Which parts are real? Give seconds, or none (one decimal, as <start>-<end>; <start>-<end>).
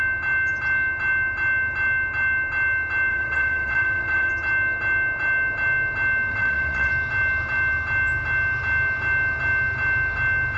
0.0-3.1; 4.3-6.3; 6.9-10.6